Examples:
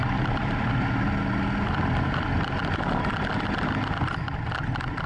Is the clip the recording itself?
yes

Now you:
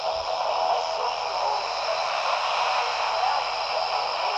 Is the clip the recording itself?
yes